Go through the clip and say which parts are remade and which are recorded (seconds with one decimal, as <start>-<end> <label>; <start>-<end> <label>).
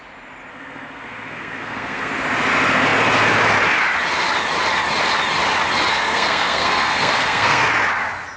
0.0-0.5 recorded; 0.5-2.1 remade; 2.1-5.9 recorded; 5.9-7.6 remade; 7.6-8.4 recorded